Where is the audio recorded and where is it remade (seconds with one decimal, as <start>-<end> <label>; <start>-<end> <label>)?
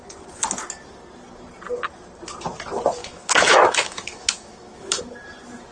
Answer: 0.0-3.0 recorded; 3.0-5.0 remade; 5.0-5.7 recorded